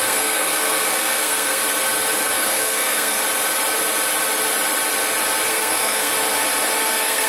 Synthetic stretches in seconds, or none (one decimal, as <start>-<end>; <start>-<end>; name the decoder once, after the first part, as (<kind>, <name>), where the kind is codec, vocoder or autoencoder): 0.0-1.6 (codec, SNAC); 2.2-3.2; 5.5-6.1; 6.8-7.3